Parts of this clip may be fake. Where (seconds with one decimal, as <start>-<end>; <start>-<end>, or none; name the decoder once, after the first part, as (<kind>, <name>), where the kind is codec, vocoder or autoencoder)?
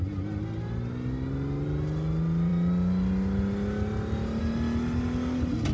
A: none